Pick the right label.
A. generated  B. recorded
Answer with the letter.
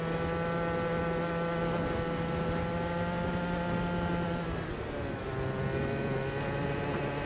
B